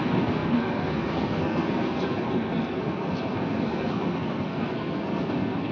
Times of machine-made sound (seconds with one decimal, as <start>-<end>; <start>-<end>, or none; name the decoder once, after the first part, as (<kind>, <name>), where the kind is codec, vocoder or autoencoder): 0.0-5.7 (codec, SNAC)